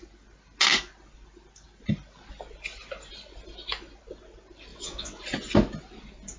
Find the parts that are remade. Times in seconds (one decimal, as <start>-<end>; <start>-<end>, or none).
4.7-5.2